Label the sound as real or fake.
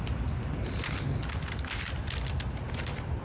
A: real